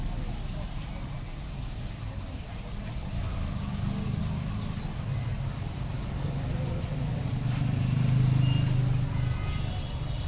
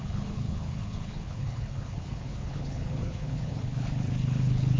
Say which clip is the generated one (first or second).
second